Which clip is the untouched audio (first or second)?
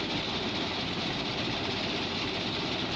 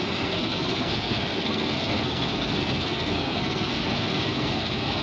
first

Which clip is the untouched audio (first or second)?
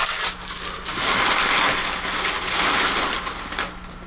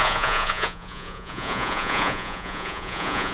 first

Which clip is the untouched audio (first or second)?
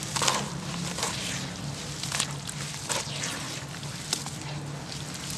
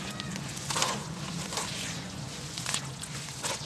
first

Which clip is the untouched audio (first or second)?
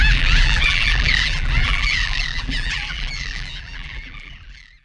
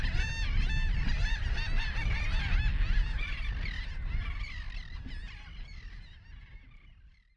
second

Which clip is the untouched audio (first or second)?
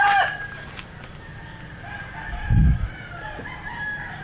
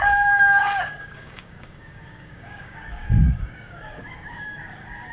first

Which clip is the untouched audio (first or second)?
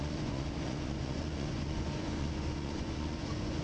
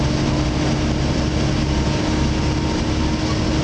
second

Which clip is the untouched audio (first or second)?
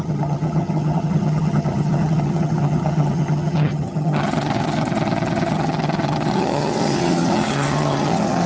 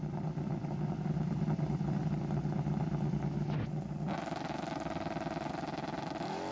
second